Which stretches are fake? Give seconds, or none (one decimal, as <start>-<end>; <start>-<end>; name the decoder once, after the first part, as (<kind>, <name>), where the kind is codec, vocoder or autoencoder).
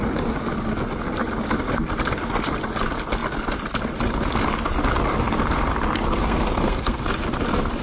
6.2-7.0 (codec, SNAC)